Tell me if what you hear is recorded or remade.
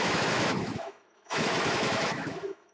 remade